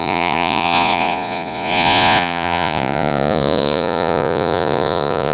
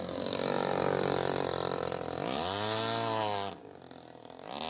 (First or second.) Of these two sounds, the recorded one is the second